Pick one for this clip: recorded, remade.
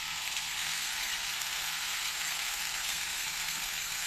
remade